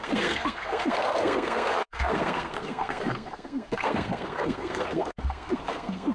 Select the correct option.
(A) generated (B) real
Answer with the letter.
A